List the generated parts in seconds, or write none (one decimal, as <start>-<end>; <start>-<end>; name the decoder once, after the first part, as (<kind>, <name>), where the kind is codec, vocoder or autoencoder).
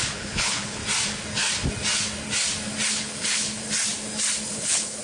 0.0-0.8 (codec, HILCodec); 2.9-3.6; 4.5-5.0